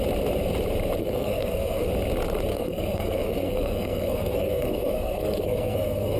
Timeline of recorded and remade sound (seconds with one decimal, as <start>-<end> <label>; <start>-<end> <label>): 0.0-1.0 recorded; 1.0-1.9 remade; 1.9-2.5 recorded; 2.5-6.2 remade

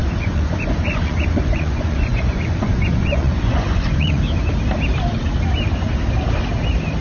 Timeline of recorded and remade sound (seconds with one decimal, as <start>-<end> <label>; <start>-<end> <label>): 0.0-4.2 remade; 4.2-7.0 recorded

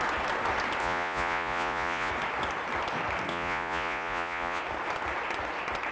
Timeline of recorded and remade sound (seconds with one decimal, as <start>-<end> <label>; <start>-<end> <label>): 0.0-0.8 recorded; 0.8-2.1 remade; 2.1-3.3 recorded; 3.3-4.6 remade; 4.6-5.9 recorded

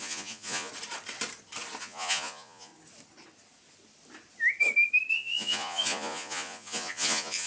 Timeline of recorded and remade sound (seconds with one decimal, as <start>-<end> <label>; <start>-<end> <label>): 0.0-0.7 remade; 0.7-1.8 recorded; 1.8-2.7 remade; 2.7-5.1 recorded; 5.1-7.5 remade

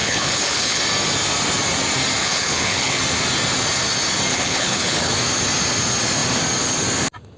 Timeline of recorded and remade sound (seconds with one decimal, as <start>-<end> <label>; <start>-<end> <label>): 0.0-0.8 remade; 0.8-2.2 recorded; 2.2-3.0 remade; 3.0-4.3 recorded; 4.3-5.1 remade; 5.1-7.4 recorded

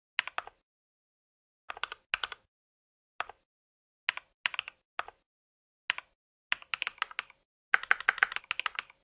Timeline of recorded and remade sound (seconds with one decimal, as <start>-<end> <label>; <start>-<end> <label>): 0.0-2.2 recorded; 2.2-2.8 remade; 2.8-9.0 recorded